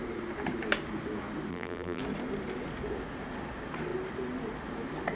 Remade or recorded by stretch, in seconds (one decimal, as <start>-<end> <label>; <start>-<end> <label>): 0.0-1.5 recorded; 1.5-2.0 remade; 2.0-5.2 recorded